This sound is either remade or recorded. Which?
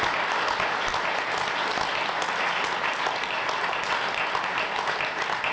recorded